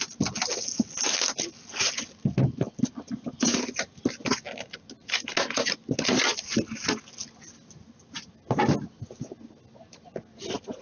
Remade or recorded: recorded